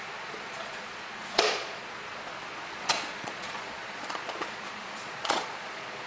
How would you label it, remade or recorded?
remade